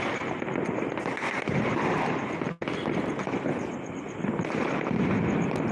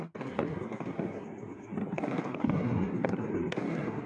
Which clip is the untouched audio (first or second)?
first